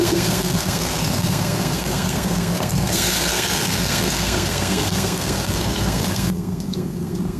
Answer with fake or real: fake